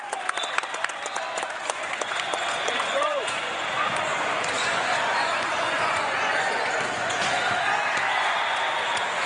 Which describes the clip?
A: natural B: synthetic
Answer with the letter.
B